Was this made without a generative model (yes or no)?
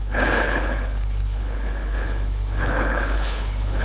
no